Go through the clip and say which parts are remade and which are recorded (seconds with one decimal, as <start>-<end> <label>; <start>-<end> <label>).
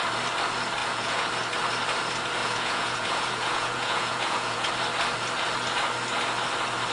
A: 0.0-0.8 recorded; 0.8-1.3 remade; 1.3-2.4 recorded; 2.4-4.7 remade; 4.7-6.9 recorded